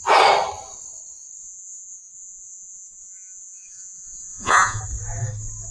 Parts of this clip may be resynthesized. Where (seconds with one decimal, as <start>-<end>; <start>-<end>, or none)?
1.4-4.8